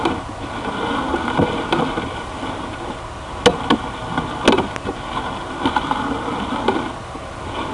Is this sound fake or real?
real